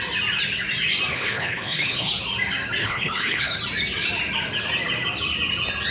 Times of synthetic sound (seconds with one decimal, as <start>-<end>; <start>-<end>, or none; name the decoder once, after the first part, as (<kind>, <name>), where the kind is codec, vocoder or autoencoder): 1.1-2.1 (codec, HILCodec); 2.8-3.6